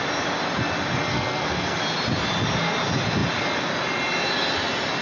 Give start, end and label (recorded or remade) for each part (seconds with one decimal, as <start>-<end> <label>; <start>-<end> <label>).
0.0-1.1 recorded; 1.1-1.8 remade; 1.8-5.0 recorded